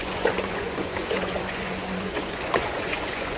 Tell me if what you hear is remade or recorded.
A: remade